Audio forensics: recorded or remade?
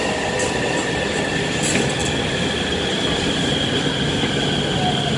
recorded